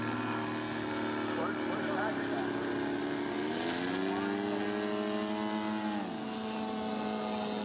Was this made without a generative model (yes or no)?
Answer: yes